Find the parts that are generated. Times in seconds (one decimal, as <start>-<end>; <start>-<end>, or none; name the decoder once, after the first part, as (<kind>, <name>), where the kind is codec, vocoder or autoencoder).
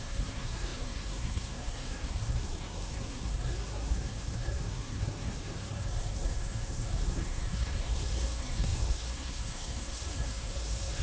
0.0-11.0 (codec, SNAC)